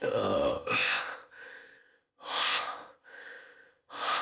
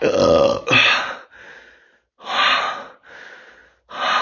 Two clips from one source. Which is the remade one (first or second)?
first